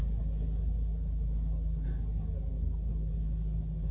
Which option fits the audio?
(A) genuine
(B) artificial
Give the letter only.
A